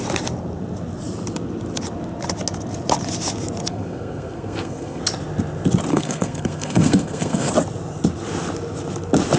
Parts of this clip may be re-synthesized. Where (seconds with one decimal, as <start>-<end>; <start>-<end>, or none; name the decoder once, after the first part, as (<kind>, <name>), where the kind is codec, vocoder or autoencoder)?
3.7-5.0 (codec, SNAC); 5.9-7.5